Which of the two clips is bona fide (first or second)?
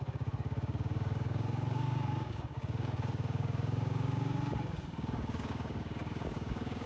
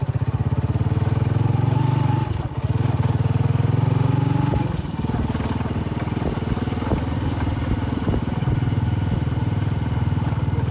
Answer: second